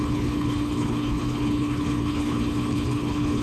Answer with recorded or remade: remade